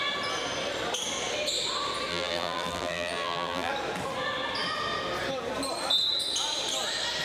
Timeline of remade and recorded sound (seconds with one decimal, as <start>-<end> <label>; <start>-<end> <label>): 0.0-2.1 recorded; 2.1-3.7 remade; 3.7-7.2 recorded

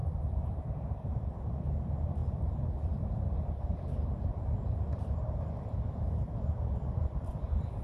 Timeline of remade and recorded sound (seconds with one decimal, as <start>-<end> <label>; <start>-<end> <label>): 0.0-2.2 recorded; 2.2-3.0 remade; 3.0-7.8 recorded

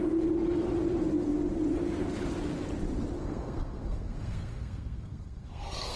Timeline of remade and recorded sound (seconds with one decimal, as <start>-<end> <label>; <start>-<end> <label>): 0.0-3.2 recorded; 3.2-6.0 remade

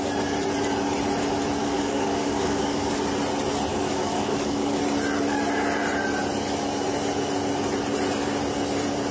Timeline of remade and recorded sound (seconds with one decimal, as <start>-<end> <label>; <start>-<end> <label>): 0.0-1.6 recorded; 1.6-3.0 remade; 3.0-3.7 recorded; 3.7-4.8 remade; 4.8-9.1 recorded